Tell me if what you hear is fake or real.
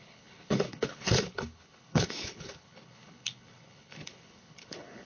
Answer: fake